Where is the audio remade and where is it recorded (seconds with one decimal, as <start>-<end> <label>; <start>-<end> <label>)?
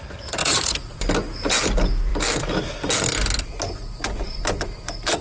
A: 0.0-0.4 recorded; 0.4-1.0 remade; 1.0-5.2 recorded